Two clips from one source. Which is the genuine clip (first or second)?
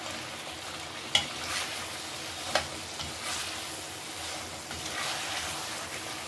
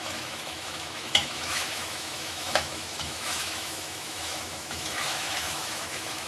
first